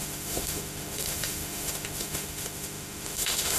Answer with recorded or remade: remade